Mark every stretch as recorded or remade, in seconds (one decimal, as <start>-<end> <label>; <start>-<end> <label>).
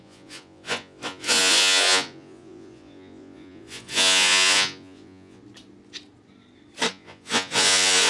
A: 0.0-5.4 remade; 5.4-6.9 recorded; 6.9-8.1 remade